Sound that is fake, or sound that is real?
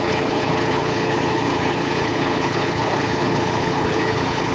fake